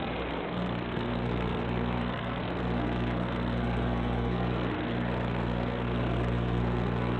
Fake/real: fake